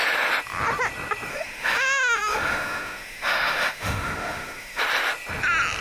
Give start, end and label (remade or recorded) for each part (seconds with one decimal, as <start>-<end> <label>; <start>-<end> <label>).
0.0-1.3 recorded; 1.3-4.8 remade; 4.8-5.8 recorded